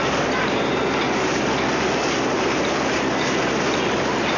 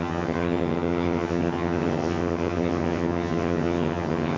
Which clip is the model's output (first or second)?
second